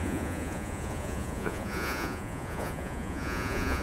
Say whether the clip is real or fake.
fake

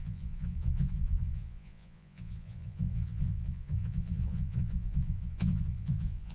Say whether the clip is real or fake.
fake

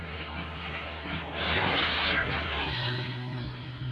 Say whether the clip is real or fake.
fake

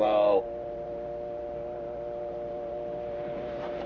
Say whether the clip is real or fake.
fake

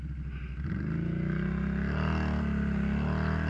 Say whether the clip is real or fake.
real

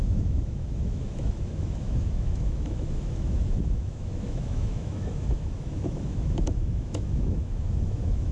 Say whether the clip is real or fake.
fake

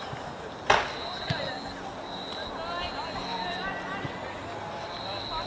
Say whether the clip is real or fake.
real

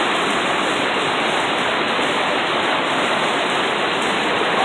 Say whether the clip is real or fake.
real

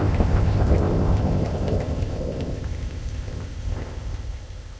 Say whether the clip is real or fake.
fake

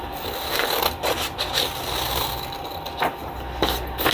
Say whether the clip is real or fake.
real